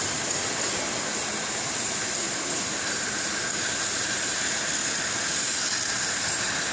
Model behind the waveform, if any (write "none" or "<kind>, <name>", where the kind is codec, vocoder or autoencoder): none